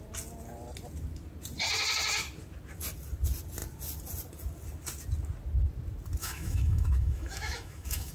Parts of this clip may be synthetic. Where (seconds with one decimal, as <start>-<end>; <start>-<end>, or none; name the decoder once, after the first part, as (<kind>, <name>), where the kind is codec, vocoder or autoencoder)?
6.2-8.1 (autoencoder, DAC-VAE)